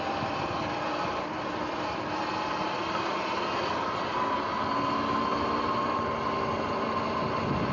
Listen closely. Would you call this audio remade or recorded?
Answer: recorded